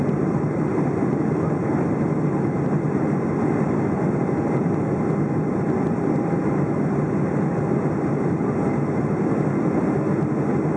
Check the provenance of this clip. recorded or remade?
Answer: recorded